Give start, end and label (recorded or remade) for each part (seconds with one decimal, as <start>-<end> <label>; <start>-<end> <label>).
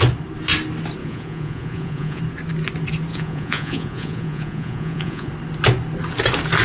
0.0-1.0 recorded; 1.0-2.2 remade; 2.2-3.1 recorded; 3.1-5.3 remade; 5.3-6.6 recorded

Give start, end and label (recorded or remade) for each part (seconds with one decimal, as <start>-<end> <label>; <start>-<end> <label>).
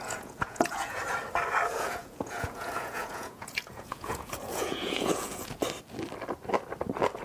0.0-1.0 remade; 1.0-1.7 recorded; 1.7-5.6 remade; 5.6-7.2 recorded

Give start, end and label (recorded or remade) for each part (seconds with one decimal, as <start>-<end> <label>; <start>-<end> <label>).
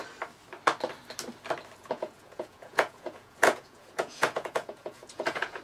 0.0-1.8 recorded; 1.8-5.6 remade